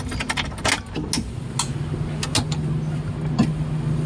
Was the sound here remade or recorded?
recorded